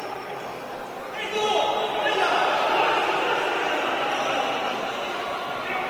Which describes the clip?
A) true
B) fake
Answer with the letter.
A